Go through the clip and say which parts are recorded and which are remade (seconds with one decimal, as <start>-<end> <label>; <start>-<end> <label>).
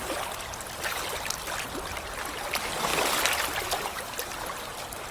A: 0.0-5.1 recorded